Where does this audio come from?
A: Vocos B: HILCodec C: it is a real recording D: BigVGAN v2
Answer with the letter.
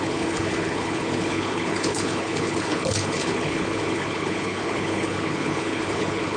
B